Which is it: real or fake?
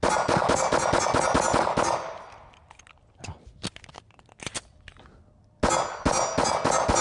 real